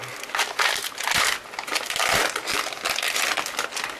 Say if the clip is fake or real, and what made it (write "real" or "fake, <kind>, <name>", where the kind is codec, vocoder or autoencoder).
real